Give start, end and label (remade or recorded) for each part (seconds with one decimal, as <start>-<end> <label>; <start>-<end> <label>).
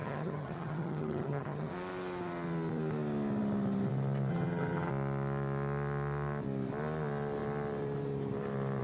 0.0-1.7 remade; 1.7-4.3 recorded; 4.3-4.9 remade; 4.9-8.8 recorded